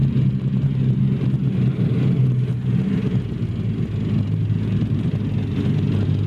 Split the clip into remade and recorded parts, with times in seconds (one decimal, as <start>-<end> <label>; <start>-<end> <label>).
0.0-1.0 remade; 1.0-1.7 recorded; 1.7-5.1 remade; 5.1-6.3 recorded